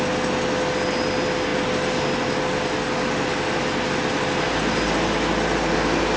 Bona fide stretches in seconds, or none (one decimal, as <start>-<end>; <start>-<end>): 0.0-6.2